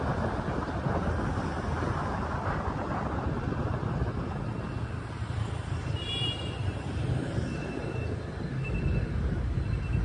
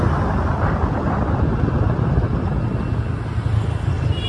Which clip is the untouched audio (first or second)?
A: second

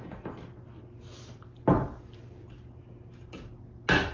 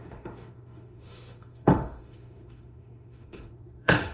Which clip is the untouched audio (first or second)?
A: first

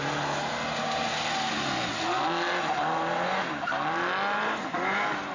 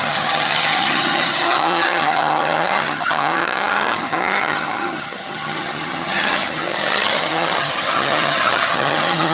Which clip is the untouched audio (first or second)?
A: first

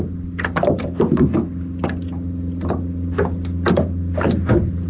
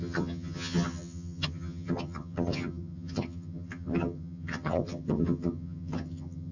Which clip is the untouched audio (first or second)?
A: first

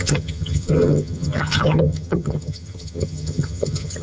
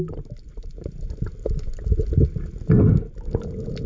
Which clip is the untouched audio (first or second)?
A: second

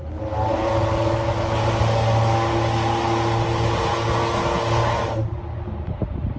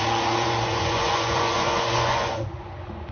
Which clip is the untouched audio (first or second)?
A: first